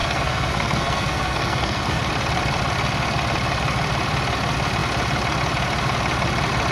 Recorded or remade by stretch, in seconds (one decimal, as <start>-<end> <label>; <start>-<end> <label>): 0.0-2.0 remade; 2.0-6.7 recorded